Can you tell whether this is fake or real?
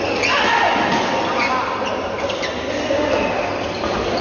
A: real